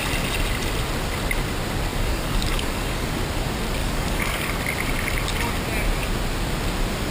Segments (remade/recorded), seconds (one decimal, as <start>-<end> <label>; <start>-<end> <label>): 0.0-1.9 recorded; 1.9-3.1 remade; 3.1-3.8 recorded; 3.8-4.5 remade; 4.5-7.1 recorded